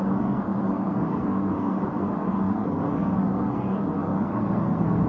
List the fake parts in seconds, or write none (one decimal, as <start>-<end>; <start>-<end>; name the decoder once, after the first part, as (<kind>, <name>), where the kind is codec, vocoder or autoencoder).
0.0-5.1 (codec, SNAC)